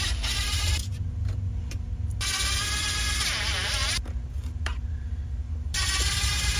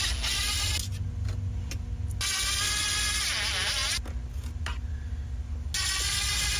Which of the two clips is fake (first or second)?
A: first